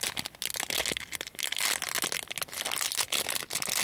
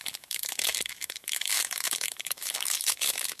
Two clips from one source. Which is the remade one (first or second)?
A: second